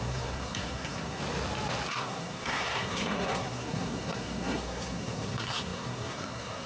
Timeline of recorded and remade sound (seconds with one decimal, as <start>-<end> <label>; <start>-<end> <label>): 0.0-1.2 remade; 1.2-1.9 recorded; 1.9-6.7 remade